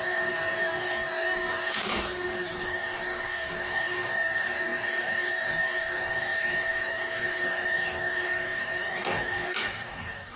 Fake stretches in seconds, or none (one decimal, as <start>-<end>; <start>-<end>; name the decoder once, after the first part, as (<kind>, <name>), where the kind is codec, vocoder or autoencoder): 0.0-10.4 (codec, DAC)